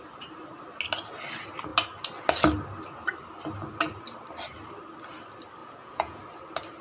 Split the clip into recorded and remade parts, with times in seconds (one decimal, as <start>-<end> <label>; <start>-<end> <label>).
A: 0.0-5.6 recorded; 5.6-6.2 remade; 6.2-6.8 recorded

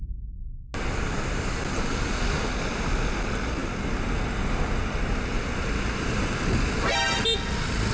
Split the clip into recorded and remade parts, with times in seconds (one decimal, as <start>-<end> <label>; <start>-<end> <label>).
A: 0.0-7.9 recorded

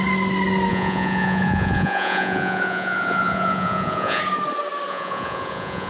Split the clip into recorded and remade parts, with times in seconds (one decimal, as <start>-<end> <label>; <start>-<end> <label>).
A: 0.0-0.7 recorded; 0.7-4.2 remade; 4.2-4.9 recorded; 4.9-5.9 remade

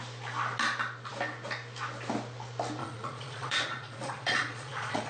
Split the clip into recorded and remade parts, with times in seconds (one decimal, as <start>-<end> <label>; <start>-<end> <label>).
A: 0.0-2.8 recorded; 2.8-5.1 remade

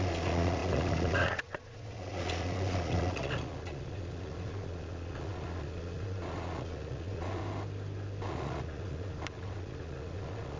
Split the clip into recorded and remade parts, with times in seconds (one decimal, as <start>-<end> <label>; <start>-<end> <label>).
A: 0.0-7.4 remade; 7.4-8.2 recorded; 8.2-10.6 remade

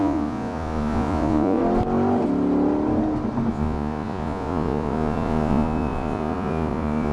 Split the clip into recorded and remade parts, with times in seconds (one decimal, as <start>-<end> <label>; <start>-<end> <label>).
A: 0.0-1.6 remade; 1.6-3.5 recorded; 3.5-7.1 remade

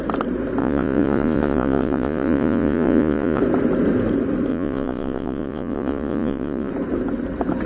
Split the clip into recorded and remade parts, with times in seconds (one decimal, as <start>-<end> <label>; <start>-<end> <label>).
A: 0.0-0.6 recorded; 0.6-3.4 remade; 3.4-4.5 recorded; 4.5-6.7 remade; 6.7-7.7 recorded